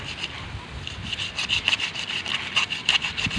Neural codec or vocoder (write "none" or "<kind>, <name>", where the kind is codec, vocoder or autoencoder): none